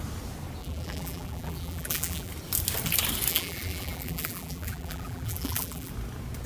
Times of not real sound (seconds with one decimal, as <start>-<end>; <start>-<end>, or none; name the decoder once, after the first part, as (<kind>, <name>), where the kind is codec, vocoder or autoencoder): 0.6-2.3 (vocoder, BigVGAN v2); 3.3-5.9

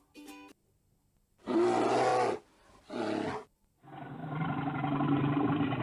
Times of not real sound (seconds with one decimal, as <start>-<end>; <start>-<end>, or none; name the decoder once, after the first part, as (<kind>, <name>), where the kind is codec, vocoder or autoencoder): 2.1-2.7 (vocoder, BigVGAN v2); 4.2-5.8

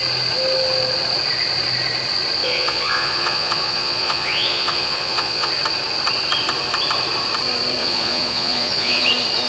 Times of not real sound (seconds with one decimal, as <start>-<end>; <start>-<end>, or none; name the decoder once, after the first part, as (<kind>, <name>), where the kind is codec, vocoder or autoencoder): 2.4-5.5 (vocoder, Vocos); 7.8-9.1